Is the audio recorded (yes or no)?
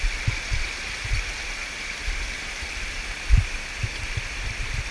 no